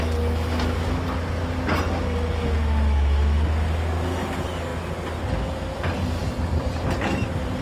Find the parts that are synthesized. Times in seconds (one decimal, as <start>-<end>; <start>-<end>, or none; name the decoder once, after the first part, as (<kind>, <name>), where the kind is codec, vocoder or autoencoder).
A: 6.2-7.6 (vocoder, BigVGAN v2)